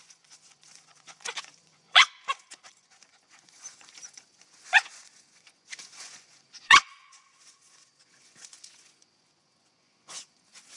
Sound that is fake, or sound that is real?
fake